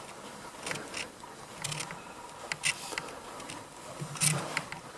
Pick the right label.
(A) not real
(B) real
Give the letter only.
B